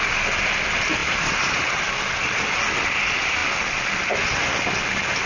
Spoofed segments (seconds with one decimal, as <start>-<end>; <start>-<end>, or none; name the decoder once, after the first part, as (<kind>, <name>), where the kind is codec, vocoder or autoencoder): 1.0-1.9 (vocoder, BigVGAN v2)